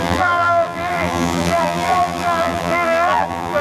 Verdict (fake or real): fake